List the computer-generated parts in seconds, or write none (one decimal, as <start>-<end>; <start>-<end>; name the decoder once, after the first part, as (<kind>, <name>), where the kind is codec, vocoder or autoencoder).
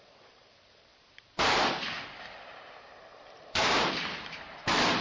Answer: 0.0-5.0 (vocoder, BigVGAN v2)